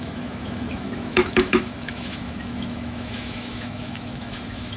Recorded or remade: remade